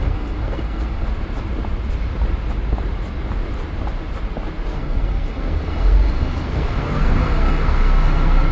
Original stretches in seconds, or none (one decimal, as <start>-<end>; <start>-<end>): 1.1-4.7